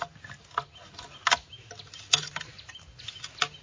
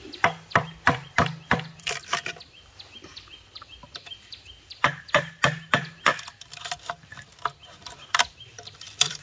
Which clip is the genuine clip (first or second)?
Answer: first